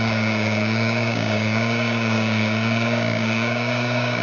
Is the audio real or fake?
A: fake